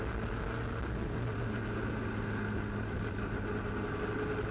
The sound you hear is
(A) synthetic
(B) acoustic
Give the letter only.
B